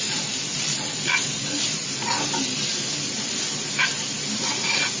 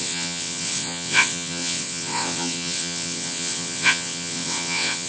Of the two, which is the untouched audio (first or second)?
first